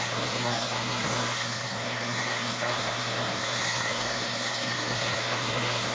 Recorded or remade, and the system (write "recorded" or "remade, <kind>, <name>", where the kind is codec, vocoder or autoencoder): remade, codec, SNAC